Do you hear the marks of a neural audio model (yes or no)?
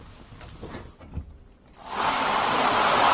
no